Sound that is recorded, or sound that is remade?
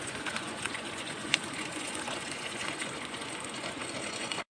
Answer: remade